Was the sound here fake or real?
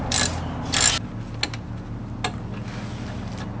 real